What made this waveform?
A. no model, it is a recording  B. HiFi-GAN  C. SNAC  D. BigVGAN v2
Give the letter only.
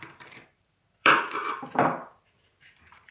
D